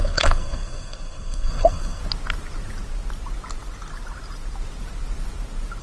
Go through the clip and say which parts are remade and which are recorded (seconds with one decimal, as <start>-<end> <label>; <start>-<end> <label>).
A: 0.0-2.0 remade; 2.0-5.8 recorded